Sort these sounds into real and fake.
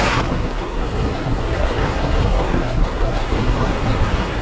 fake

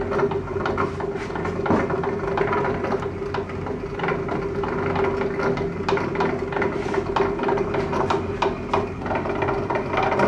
real